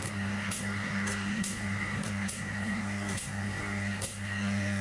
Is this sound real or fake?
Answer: fake